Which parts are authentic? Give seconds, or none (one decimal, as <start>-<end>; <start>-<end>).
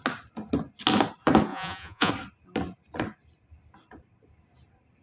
0.0-1.5; 2.1-5.0